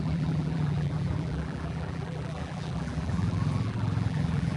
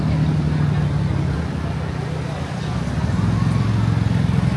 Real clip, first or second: second